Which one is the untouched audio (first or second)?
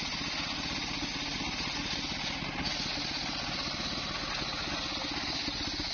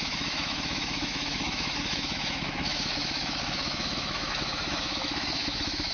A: first